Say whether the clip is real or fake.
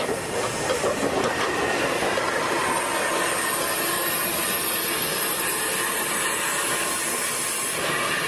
real